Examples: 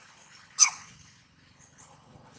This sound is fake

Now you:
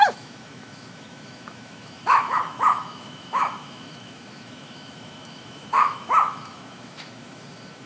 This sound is fake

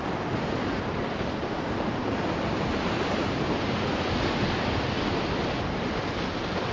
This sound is real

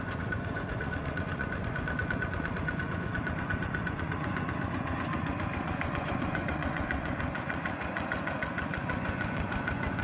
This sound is fake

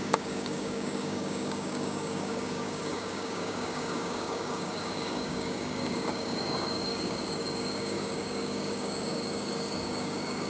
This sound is fake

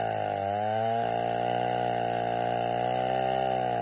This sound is real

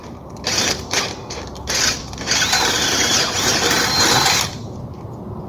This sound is fake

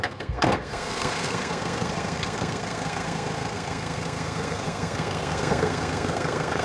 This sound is fake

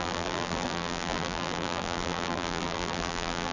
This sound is fake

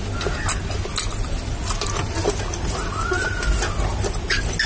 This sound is real